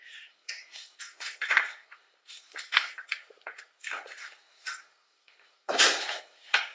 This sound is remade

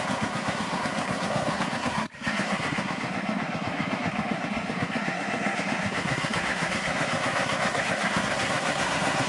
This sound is remade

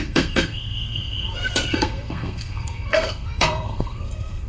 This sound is remade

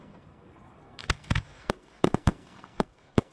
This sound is remade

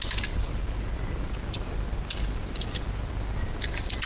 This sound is recorded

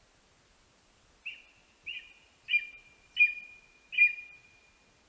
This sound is recorded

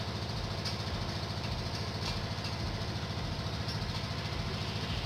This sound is recorded